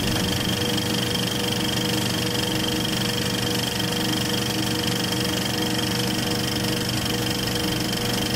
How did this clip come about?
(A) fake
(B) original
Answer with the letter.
B